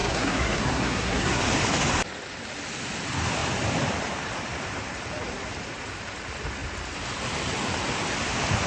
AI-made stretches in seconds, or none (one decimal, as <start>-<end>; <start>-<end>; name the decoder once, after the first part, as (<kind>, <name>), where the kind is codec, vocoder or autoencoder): 0.0-1.4 (codec, SNAC)